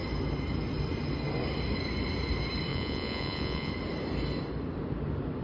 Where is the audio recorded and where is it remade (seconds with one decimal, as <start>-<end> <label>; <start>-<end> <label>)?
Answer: 0.0-2.7 recorded; 2.7-3.7 remade; 3.7-5.4 recorded